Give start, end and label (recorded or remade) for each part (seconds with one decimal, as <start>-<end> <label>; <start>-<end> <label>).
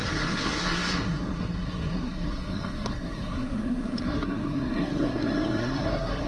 0.0-6.3 remade